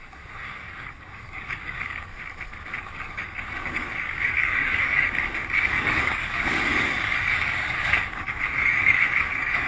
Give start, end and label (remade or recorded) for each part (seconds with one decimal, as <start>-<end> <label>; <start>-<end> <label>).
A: 0.0-2.1 remade; 2.1-2.8 recorded; 2.8-9.7 remade